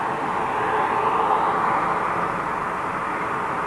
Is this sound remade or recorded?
recorded